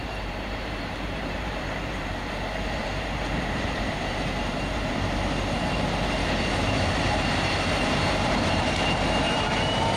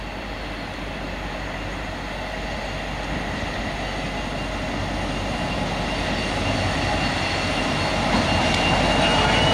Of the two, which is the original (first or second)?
second